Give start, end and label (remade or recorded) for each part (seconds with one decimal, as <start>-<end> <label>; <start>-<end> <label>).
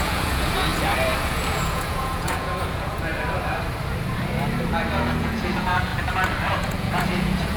0.0-0.7 remade; 0.7-1.2 recorded; 1.2-3.1 remade; 3.1-5.2 recorded; 5.2-5.9 remade; 5.9-6.5 recorded; 6.5-7.6 remade